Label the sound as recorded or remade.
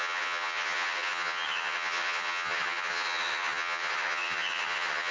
remade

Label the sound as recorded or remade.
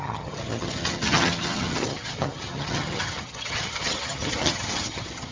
remade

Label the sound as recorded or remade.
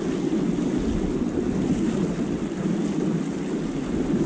recorded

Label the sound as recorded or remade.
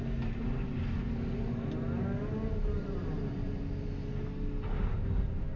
recorded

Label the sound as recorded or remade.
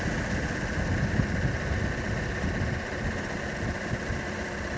recorded